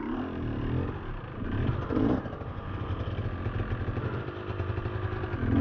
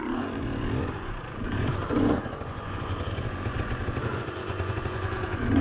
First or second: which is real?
first